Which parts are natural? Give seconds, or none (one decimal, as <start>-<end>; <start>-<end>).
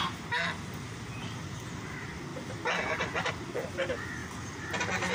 0.0-5.1